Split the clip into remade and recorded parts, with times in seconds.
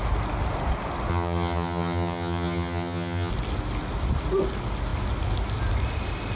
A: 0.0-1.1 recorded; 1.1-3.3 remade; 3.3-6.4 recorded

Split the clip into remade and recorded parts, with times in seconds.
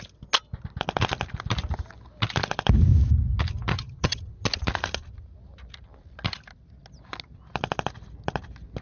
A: 0.0-3.7 recorded; 3.7-4.2 remade; 4.2-8.8 recorded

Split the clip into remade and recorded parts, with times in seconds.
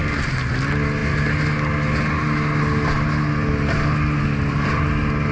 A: 0.0-5.3 recorded